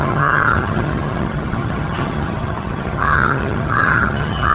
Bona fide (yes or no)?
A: no